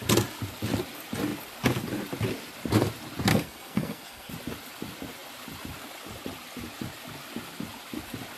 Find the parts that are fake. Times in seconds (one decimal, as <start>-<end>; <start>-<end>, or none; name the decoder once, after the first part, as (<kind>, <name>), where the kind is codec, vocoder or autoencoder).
3.3-4.3 (codec, SNAC)